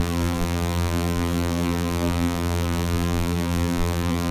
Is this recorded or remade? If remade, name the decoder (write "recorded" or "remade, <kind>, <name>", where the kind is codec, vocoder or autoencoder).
remade, vocoder, BigVGAN v2